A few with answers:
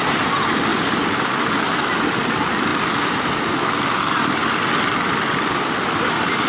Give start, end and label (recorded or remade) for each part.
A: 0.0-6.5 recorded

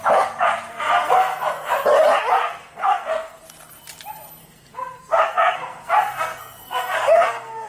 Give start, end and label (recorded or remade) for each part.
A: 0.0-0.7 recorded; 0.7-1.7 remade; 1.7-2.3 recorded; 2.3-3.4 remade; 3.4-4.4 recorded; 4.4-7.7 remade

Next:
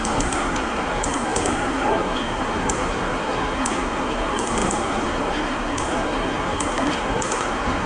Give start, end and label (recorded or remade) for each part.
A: 0.0-7.9 remade

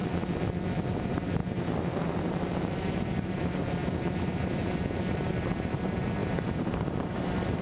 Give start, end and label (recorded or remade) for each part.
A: 0.0-0.8 recorded; 0.8-7.6 remade